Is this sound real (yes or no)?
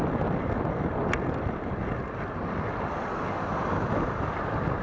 yes